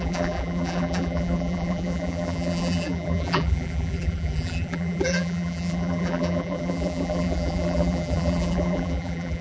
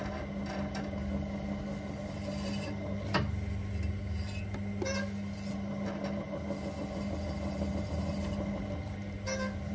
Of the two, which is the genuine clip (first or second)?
second